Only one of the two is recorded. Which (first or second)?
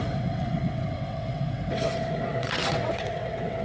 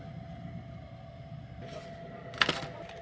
second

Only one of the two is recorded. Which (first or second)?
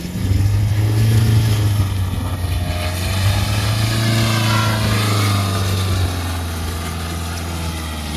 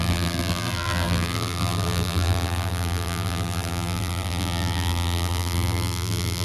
first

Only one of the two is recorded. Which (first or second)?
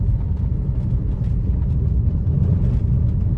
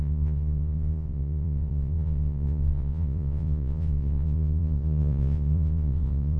first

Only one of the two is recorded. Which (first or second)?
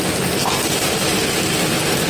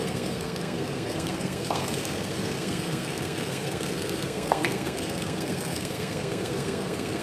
first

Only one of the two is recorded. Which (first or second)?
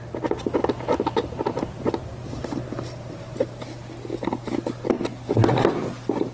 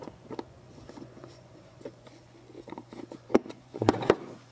first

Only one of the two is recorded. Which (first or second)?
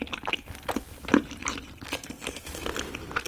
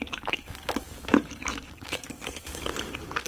first